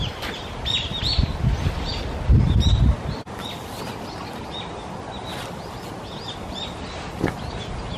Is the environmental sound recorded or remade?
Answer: recorded